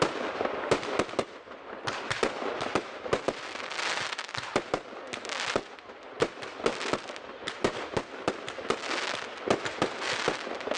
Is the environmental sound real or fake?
real